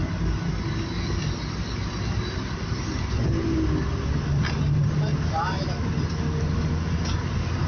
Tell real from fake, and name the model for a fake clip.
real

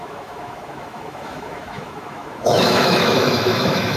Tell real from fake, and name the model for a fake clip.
fake, autoencoder, DAC-VAE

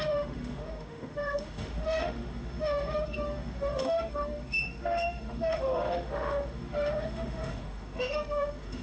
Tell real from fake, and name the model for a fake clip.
fake, autoencoder, DAC-VAE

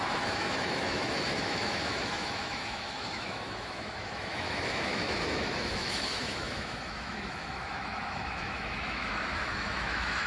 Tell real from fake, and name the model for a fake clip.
fake, autoencoder, DAC-VAE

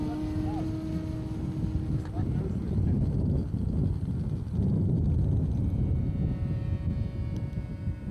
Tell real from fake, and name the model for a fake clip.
real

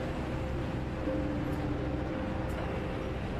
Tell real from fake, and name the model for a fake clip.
real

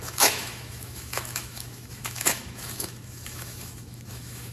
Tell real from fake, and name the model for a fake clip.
fake, autoencoder, DAC-VAE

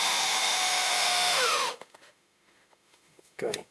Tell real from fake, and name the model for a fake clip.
fake, autoencoder, DAC-VAE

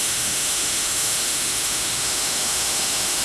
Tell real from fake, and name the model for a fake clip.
fake, autoencoder, DAC-VAE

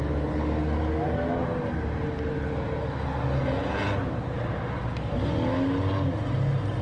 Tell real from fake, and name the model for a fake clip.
real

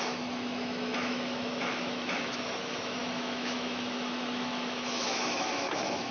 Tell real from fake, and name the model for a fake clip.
fake, autoencoder, DAC-VAE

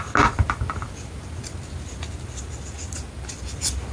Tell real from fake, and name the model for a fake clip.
real